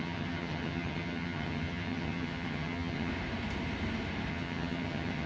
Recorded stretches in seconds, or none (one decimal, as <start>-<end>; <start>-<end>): 3.1-4.3